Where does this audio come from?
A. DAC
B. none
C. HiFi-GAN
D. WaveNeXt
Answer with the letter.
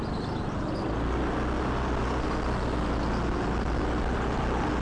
B